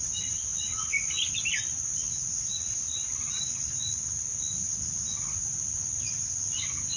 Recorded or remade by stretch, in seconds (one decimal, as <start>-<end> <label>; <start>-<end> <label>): 0.0-7.0 recorded